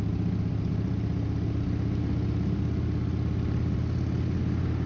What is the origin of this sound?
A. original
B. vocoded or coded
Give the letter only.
A